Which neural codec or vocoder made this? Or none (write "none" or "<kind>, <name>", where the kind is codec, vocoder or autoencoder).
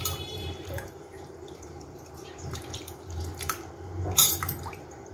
vocoder, BigVGAN v2